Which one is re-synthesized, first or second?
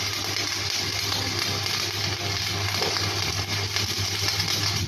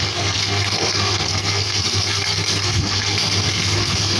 second